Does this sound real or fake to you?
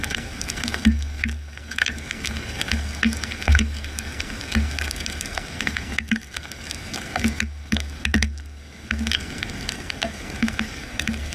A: fake